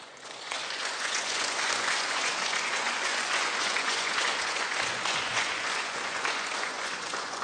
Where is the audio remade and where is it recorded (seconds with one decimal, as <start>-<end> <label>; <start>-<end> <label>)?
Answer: 0.0-7.4 remade